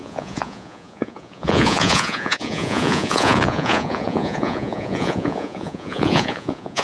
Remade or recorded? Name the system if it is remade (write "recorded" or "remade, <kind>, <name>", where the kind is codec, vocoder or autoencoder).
remade, vocoder, Vocos